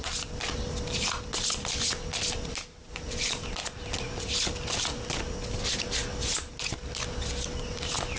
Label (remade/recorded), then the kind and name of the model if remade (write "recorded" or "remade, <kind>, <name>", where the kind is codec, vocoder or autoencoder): recorded